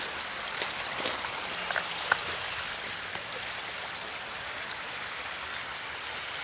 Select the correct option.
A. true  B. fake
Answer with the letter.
A